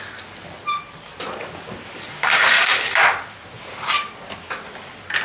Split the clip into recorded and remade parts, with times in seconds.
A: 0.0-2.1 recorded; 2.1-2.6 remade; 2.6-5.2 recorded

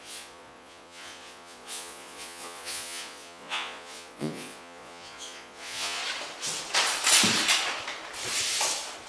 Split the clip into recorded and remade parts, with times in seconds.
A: 0.0-6.0 remade; 6.0-9.1 recorded

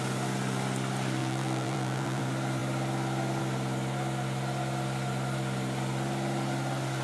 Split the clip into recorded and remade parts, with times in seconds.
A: 0.0-1.2 recorded; 1.2-2.2 remade; 2.2-7.0 recorded

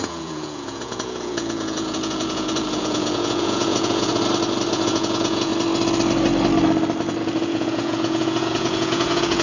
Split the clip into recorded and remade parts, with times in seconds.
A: 0.0-4.1 remade; 4.1-4.7 recorded; 4.7-5.5 remade; 5.5-7.2 recorded; 7.2-9.4 remade

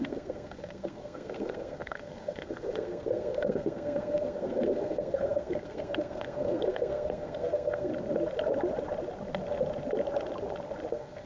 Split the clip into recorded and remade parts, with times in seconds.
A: 0.0-7.9 remade; 7.9-10.9 recorded; 10.9-11.3 remade

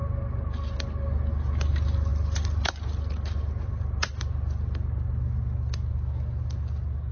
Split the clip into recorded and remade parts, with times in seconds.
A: 0.0-7.1 recorded